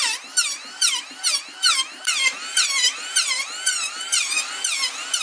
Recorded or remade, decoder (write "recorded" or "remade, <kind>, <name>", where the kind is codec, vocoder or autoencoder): recorded